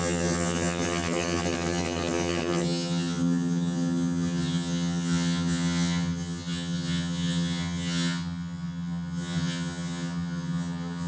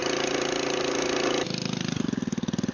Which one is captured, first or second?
second